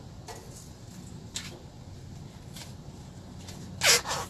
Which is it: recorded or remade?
recorded